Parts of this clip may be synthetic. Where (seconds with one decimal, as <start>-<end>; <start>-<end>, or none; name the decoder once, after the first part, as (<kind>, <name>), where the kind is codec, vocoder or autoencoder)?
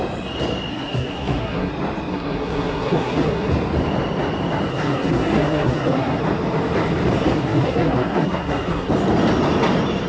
0.7-1.7 (codec, SNAC); 2.1-3.5; 4.7-6.2; 7.3-8.9